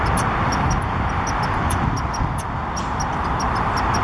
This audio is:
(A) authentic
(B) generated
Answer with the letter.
A